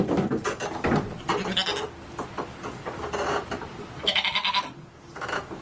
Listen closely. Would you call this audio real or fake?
real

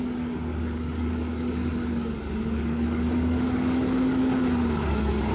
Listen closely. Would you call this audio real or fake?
fake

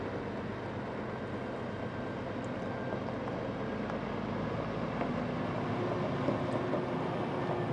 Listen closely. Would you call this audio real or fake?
real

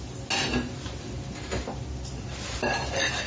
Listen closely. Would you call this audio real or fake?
real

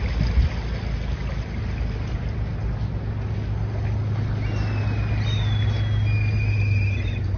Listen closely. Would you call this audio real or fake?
real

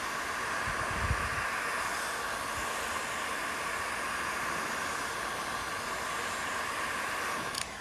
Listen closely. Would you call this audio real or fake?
real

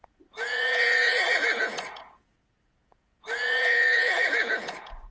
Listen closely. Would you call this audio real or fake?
fake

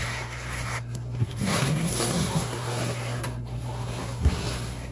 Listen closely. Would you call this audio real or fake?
fake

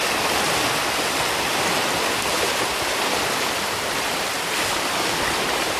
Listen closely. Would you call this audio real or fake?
real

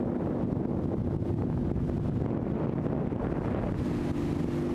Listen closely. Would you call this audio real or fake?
real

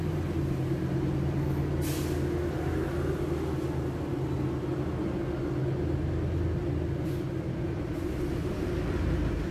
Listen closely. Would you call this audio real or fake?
real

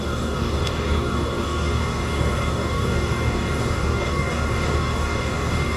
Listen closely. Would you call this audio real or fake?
fake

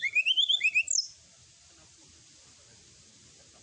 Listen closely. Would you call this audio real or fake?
real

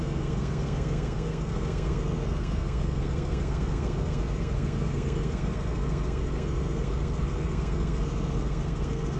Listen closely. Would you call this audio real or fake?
fake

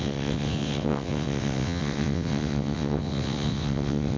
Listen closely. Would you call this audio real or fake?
fake